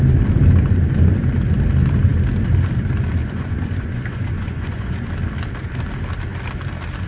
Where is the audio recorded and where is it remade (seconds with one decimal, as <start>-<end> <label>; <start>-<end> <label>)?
0.0-3.2 recorded; 3.2-5.1 remade; 5.1-7.1 recorded